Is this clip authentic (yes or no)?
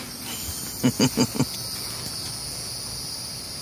yes